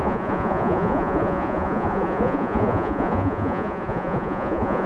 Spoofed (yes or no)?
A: yes